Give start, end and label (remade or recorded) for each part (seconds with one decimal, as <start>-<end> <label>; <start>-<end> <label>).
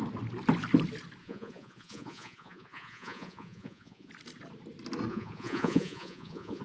0.0-1.2 recorded; 1.2-4.1 remade; 4.1-5.1 recorded; 5.1-6.6 remade